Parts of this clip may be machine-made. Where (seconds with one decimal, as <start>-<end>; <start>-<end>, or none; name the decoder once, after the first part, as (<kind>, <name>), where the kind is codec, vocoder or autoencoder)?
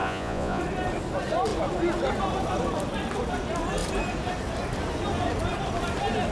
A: 0.0-0.6 (vocoder, Vocos)